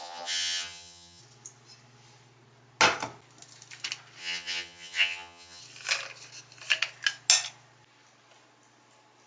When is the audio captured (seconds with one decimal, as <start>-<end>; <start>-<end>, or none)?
1.2-4.2; 5.6-9.3